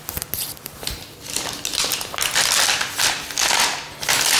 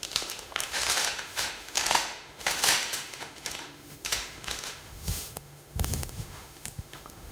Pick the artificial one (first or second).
second